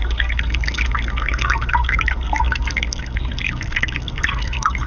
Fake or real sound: fake